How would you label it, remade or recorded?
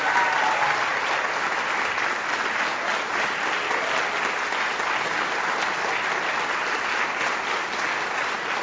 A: recorded